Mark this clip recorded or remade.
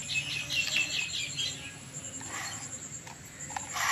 recorded